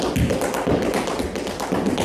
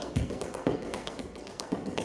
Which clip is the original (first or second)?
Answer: first